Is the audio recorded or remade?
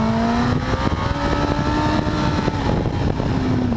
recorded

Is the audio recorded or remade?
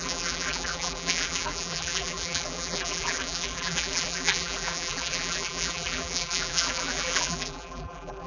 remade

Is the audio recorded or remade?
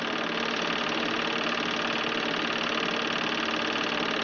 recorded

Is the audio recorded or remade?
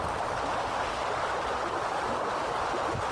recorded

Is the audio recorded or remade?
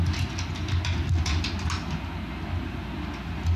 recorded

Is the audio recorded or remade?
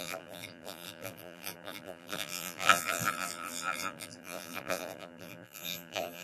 remade